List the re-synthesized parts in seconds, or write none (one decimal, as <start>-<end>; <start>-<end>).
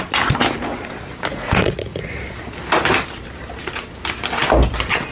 1.3-2.2